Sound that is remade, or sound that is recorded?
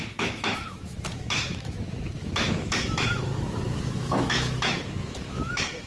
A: remade